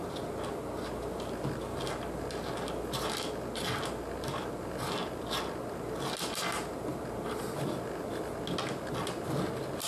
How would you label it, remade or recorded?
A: recorded